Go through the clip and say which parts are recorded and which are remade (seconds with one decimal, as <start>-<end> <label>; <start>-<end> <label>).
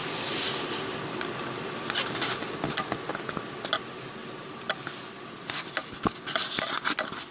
0.0-7.3 recorded